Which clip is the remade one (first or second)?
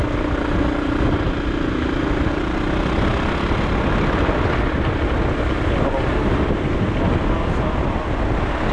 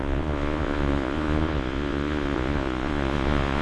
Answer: second